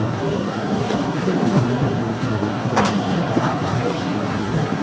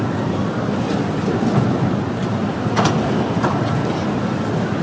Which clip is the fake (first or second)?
first